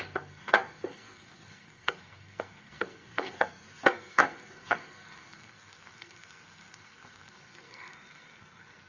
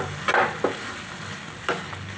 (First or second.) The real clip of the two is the second